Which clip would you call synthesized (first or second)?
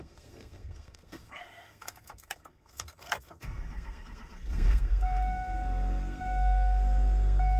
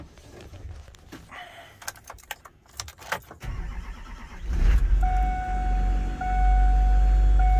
first